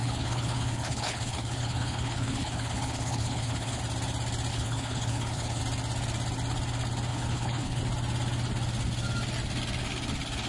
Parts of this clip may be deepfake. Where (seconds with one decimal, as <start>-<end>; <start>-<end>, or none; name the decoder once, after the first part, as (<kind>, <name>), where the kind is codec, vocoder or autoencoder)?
0.0-3.8 (codec, HILCodec); 4.5-5.6; 7.1-7.8